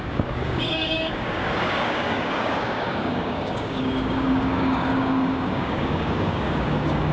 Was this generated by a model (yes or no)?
yes